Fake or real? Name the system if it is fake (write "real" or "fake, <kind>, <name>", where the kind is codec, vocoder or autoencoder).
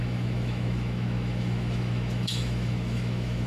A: fake, autoencoder, DAC-VAE